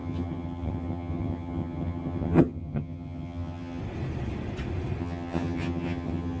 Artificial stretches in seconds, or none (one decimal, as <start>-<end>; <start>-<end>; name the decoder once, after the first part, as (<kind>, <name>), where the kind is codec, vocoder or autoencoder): 0.0-3.8 (vocoder, HiFi-GAN); 5.0-6.4